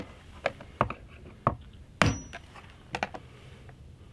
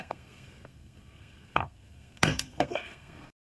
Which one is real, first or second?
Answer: first